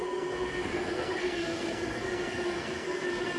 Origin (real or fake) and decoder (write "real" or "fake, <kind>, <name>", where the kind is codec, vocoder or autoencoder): fake, codec, SNAC